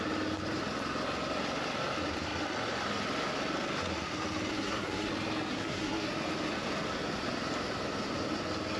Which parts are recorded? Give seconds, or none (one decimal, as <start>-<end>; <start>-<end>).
0.0-4.5; 5.1-5.5; 6.1-8.8